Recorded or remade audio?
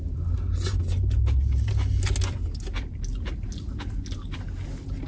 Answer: recorded